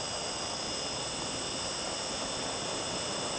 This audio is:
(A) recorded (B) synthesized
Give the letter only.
A